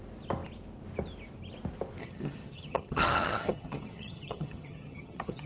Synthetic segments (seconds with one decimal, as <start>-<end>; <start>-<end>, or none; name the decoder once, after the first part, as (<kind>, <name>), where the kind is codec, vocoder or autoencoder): 2.0-5.5 (vocoder, HiFi-GAN)